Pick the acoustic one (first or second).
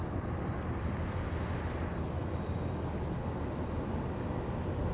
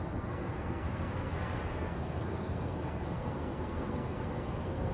first